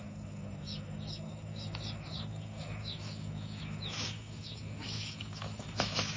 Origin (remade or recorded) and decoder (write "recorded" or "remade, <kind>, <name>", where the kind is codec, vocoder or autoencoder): remade, autoencoder, DAC-VAE